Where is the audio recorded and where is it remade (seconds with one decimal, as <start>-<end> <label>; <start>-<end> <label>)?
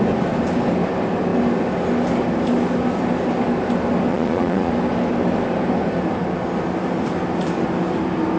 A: 0.0-4.1 recorded; 4.1-4.7 remade; 4.7-8.4 recorded